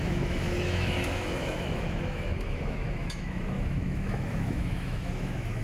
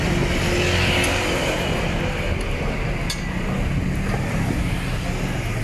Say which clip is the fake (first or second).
first